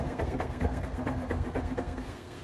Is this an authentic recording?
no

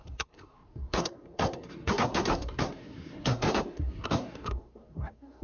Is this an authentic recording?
no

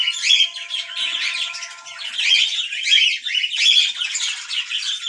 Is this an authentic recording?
yes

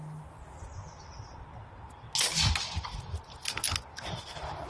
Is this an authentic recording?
yes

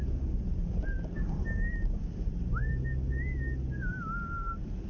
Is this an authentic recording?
yes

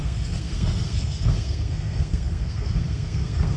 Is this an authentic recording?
no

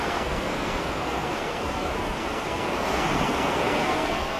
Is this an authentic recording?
no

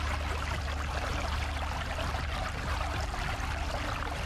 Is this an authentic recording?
yes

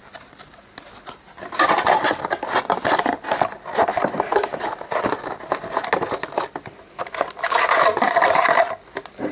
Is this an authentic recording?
yes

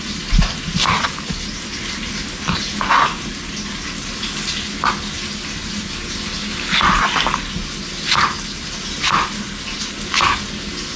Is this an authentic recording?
yes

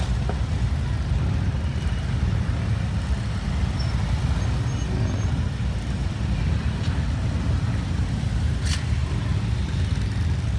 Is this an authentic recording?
yes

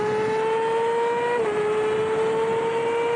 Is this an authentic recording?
yes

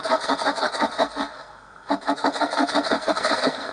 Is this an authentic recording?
no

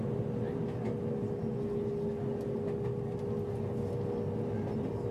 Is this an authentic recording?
yes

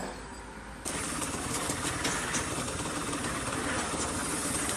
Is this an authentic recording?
yes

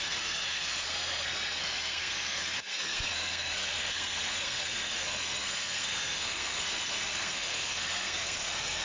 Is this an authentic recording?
no